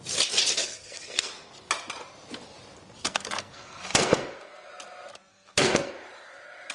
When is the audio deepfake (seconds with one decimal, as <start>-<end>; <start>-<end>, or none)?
0.6-1.3; 3.0-4.7; 5.3-5.9